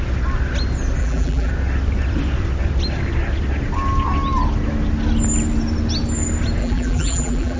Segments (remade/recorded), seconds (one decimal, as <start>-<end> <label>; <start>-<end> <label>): 0.0-1.0 recorded; 1.0-1.5 remade; 1.5-6.6 recorded; 6.6-7.6 remade

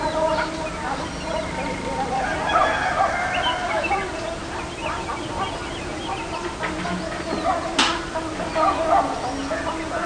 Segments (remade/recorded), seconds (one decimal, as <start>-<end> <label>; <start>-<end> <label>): 0.0-10.1 recorded